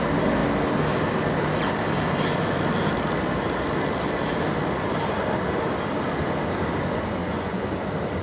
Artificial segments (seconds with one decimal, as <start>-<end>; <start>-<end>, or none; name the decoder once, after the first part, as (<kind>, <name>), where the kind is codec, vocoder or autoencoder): 7.2-7.7 (vocoder, Vocos)